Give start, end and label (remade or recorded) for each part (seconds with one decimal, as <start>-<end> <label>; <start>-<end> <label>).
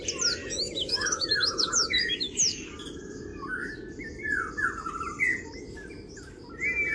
0.0-0.4 recorded; 0.4-2.7 remade; 2.7-6.9 recorded